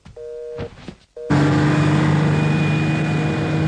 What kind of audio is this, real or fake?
real